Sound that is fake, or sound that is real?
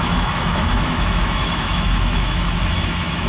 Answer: fake